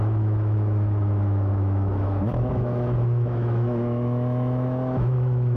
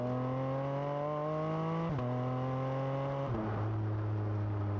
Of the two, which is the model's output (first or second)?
first